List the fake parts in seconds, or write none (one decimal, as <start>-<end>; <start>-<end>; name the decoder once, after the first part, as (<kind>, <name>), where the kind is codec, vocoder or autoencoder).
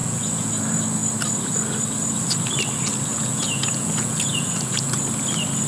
0.0-0.6 (vocoder, Vocos); 3.1-5.0